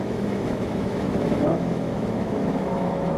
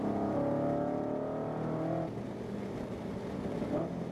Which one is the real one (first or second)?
second